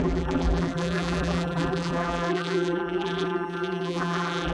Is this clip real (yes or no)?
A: no